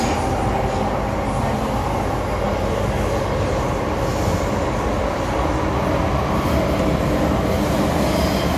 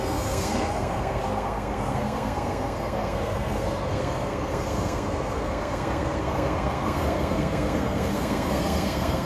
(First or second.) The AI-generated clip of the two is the second